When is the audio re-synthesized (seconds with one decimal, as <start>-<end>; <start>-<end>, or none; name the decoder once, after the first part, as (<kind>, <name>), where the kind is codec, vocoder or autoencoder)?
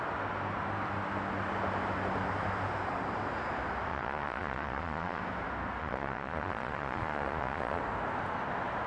3.9-5.2 (vocoder, Vocos); 5.8-7.8